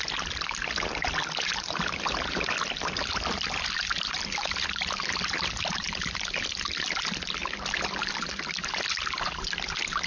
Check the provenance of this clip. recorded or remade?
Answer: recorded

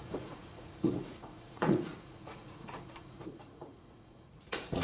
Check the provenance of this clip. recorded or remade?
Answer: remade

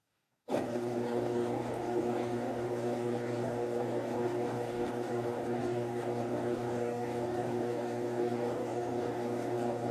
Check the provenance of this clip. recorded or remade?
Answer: remade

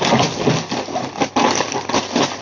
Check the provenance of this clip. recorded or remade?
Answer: recorded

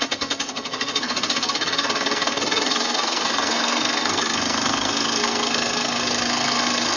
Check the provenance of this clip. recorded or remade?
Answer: remade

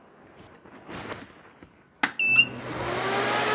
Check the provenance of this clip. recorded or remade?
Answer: recorded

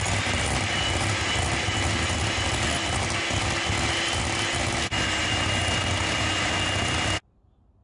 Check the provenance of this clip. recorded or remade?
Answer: recorded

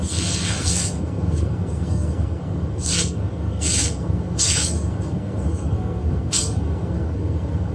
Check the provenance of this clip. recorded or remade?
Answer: remade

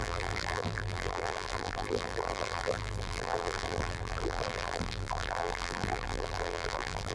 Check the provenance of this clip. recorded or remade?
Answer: remade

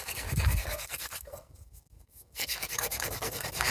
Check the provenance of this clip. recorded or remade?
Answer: remade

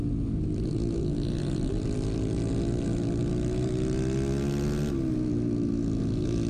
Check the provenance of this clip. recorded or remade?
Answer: recorded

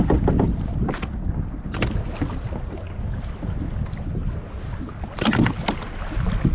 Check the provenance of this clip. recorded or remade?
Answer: recorded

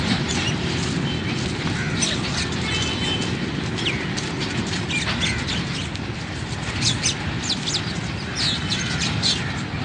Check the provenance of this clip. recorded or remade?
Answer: recorded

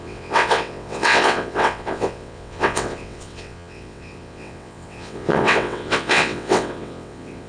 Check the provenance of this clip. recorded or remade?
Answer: remade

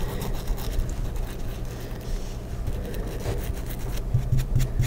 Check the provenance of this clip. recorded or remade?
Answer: recorded